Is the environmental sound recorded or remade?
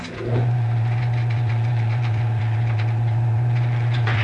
remade